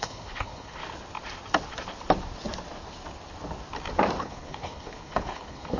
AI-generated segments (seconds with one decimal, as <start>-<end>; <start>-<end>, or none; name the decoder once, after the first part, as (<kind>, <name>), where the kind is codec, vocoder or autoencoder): 0.0-0.8 (codec, HILCodec); 4.2-5.8